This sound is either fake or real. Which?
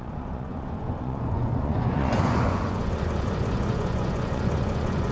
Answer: fake